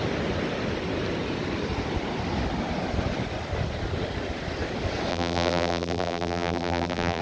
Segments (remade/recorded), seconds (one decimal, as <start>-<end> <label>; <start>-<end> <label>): 0.0-5.1 recorded; 5.1-7.2 remade